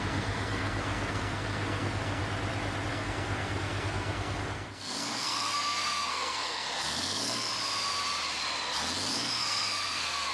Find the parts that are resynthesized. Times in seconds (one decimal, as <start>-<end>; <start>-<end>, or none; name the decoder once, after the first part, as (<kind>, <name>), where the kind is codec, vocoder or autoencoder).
0.0-2.2 (codec, SNAC); 2.9-7.5; 9.1-10.3